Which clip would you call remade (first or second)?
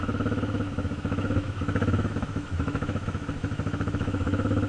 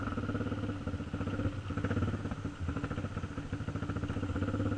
first